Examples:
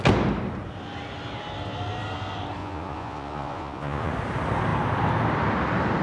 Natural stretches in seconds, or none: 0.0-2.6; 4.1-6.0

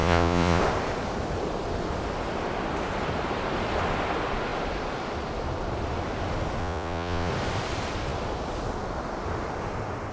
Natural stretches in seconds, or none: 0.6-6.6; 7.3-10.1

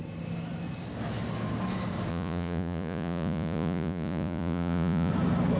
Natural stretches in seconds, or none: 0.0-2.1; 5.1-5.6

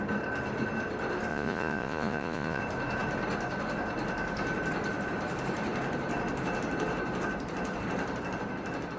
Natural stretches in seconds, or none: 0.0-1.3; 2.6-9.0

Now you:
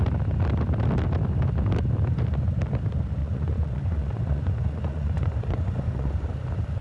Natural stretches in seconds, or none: 0.0-3.2; 6.3-6.8

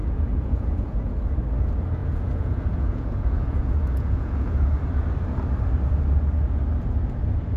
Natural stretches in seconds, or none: 1.1-2.0; 4.7-7.6

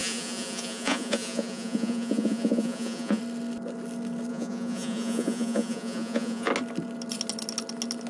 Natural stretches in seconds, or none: 3.2-4.3; 6.5-8.1